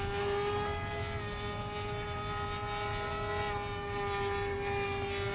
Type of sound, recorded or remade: recorded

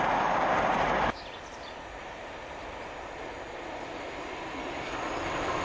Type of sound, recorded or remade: recorded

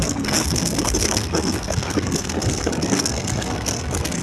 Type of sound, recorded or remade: remade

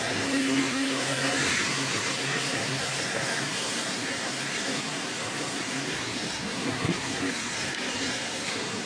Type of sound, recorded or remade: remade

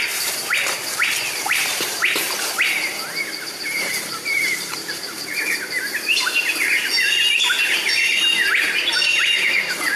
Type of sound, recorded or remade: remade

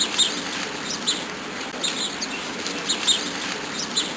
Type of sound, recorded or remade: recorded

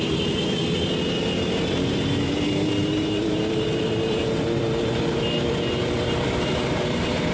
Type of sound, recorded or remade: remade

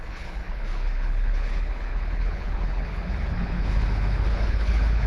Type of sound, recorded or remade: remade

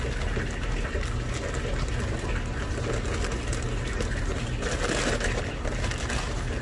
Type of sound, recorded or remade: recorded